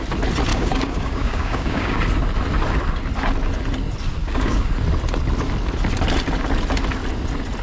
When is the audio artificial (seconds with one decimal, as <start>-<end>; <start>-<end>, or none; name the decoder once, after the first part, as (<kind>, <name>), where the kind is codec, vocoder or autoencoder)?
0.5-2.0 (codec, DAC); 4.2-4.7